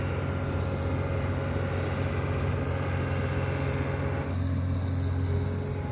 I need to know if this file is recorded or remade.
recorded